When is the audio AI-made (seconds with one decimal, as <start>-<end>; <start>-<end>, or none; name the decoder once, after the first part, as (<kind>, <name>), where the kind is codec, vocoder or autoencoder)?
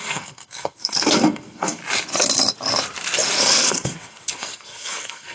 0.0-1.8 (codec, SNAC); 3.4-5.3